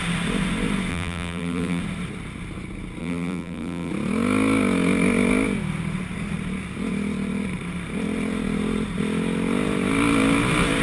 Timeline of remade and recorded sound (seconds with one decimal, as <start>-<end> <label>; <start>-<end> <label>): 0.0-0.9 recorded; 0.9-1.8 remade; 1.8-3.0 recorded; 3.0-3.9 remade; 3.9-10.8 recorded